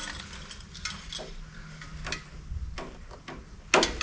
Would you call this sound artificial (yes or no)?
no